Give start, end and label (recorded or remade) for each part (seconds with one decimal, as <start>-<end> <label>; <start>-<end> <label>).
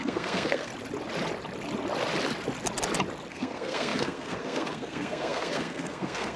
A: 0.0-0.7 remade; 0.7-3.3 recorded; 3.3-6.4 remade